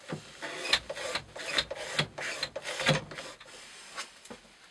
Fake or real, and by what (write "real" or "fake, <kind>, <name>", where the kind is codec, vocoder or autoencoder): real